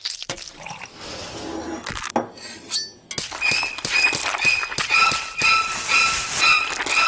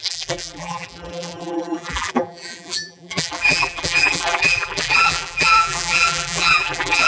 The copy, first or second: second